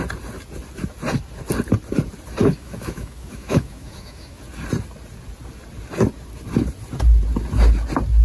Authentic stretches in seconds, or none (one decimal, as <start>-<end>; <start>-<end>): 0.0-2.4; 4.4-8.2